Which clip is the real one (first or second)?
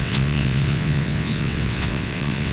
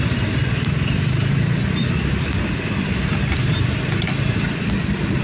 second